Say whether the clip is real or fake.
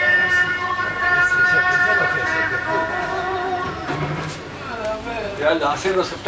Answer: fake